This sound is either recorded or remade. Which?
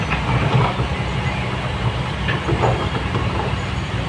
recorded